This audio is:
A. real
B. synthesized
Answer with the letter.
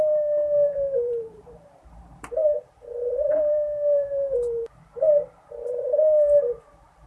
B